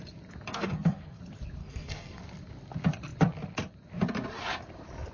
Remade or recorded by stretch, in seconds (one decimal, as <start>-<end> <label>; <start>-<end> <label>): 0.0-0.5 recorded; 0.5-1.2 remade; 1.2-1.6 recorded; 1.6-2.2 remade; 2.2-5.1 recorded